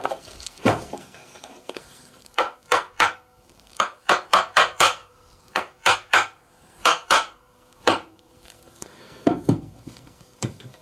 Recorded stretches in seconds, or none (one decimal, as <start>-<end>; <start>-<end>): none